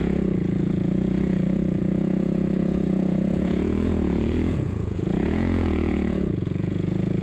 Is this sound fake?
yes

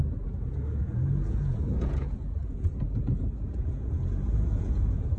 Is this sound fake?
yes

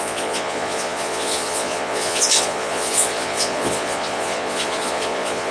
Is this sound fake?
yes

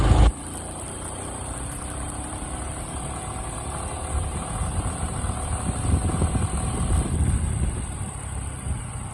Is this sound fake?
no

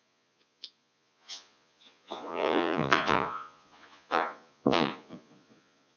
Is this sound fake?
yes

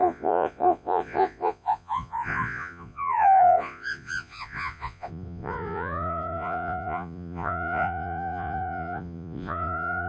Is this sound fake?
yes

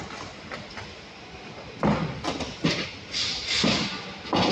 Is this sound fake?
no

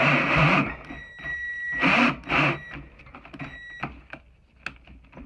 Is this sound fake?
no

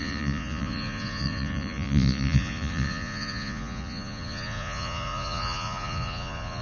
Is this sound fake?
yes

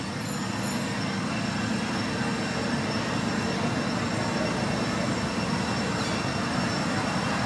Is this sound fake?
no